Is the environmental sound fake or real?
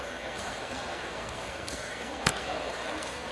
fake